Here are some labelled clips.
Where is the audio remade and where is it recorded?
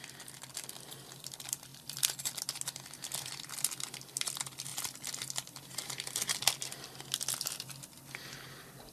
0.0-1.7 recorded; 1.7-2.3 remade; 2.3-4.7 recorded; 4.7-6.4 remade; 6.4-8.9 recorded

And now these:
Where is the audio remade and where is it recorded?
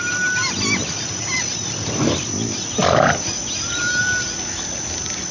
0.0-0.8 recorded; 0.8-4.0 remade; 4.0-5.3 recorded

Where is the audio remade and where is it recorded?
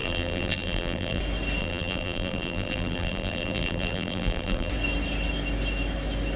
0.0-1.2 remade; 1.2-1.6 recorded; 1.6-4.7 remade; 4.7-6.4 recorded